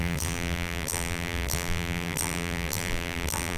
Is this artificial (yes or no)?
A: yes